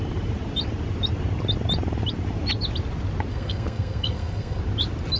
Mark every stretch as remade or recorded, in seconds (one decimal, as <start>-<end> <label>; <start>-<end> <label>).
0.0-3.3 recorded; 3.3-4.6 remade; 4.6-5.2 recorded